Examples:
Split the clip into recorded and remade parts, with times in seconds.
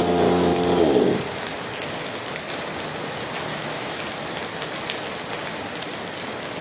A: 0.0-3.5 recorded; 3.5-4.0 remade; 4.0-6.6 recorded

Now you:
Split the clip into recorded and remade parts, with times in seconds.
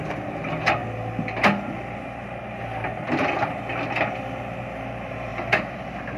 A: 0.0-6.2 recorded